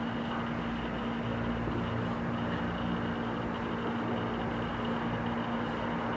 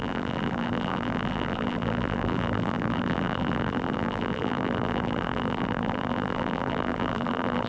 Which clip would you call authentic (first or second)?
first